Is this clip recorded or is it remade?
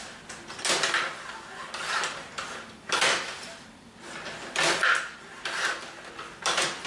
recorded